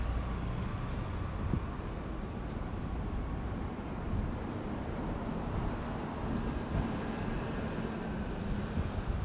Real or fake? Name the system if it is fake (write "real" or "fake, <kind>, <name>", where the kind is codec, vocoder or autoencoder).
real